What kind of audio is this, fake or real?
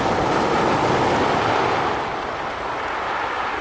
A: real